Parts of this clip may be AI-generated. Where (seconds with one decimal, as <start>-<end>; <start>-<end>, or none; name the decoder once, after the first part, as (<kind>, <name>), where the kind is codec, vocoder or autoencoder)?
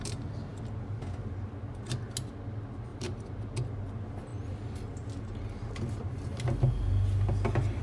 2.9-3.4 (vocoder, BigVGAN v2)